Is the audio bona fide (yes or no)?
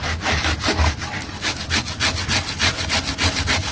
yes